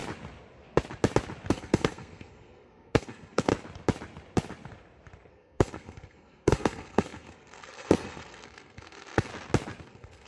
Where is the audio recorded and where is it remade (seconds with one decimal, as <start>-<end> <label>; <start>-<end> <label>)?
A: 0.0-1.5 recorded; 1.5-3.5 remade; 3.5-5.3 recorded; 5.3-9.3 remade; 9.3-9.8 recorded; 9.8-10.3 remade